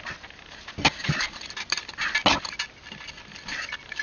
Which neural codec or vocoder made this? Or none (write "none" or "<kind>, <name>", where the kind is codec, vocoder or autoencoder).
none